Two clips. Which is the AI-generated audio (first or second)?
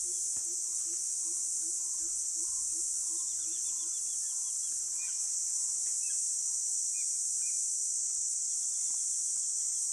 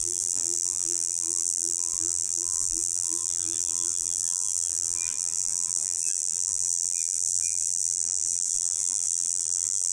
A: second